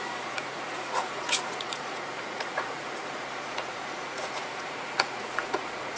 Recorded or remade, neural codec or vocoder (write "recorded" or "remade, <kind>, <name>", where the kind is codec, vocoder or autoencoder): remade, vocoder, Vocos